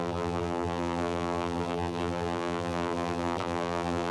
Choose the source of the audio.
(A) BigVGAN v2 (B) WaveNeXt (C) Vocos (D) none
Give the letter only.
A